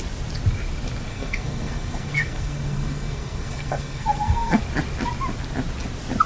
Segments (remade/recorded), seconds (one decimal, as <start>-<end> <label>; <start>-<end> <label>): 0.0-1.1 recorded; 1.1-4.6 remade; 4.6-6.3 recorded